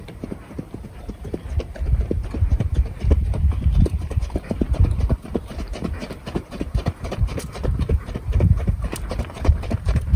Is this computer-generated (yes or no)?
yes